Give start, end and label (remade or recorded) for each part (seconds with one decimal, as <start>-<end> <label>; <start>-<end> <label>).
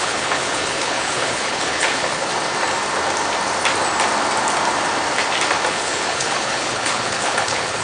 0.0-2.3 remade; 2.3-5.7 recorded; 5.7-7.8 remade